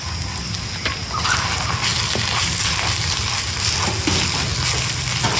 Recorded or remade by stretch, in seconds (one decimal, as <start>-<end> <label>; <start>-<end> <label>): 0.0-5.4 recorded